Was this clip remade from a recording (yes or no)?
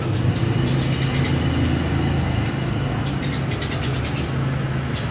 no